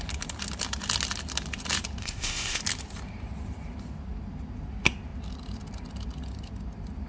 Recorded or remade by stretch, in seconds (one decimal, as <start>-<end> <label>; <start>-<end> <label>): 0.0-2.0 recorded; 2.0-2.6 remade; 2.6-7.1 recorded